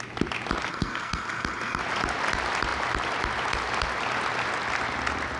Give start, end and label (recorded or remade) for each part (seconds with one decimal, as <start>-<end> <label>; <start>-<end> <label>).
0.0-0.7 recorded; 0.7-1.8 remade; 1.8-5.4 recorded